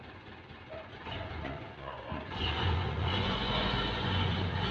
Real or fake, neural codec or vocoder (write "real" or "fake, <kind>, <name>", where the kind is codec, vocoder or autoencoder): fake, vocoder, Vocos